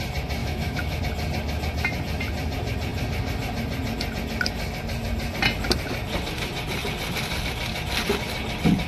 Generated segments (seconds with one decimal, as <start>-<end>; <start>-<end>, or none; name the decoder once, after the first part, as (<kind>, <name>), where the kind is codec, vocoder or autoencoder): 0.4-1.0 (autoencoder, DAC-VAE)